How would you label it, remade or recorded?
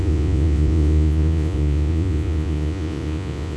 remade